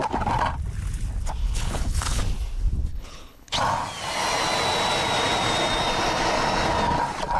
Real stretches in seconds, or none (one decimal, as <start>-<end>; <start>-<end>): 0.0-1.4; 2.2-2.9; 3.5-7.4